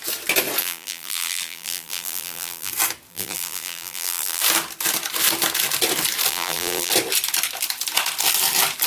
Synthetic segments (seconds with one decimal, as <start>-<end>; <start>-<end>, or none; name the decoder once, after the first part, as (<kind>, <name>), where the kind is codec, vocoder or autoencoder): 0.6-2.7 (vocoder, BigVGAN v2); 3.1-4.4; 6.3-6.9